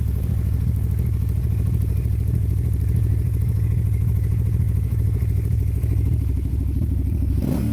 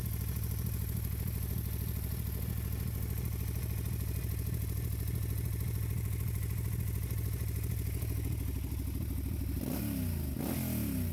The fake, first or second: first